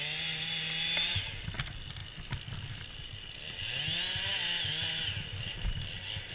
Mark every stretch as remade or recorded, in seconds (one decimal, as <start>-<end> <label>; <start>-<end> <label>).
0.0-6.3 recorded